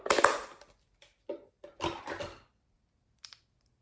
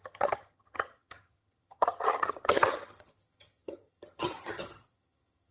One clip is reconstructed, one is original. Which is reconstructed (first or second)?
second